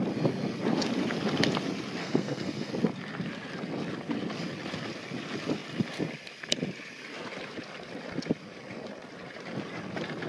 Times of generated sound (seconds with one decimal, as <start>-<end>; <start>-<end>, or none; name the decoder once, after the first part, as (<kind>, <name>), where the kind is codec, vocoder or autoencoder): 2.0-2.7 (codec, SNAC)